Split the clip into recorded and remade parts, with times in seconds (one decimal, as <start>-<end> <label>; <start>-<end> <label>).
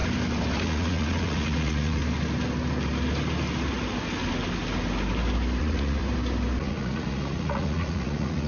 0.0-0.6 recorded; 0.6-2.0 remade; 2.0-5.6 recorded; 5.6-6.0 remade; 6.0-6.6 recorded; 6.6-8.5 remade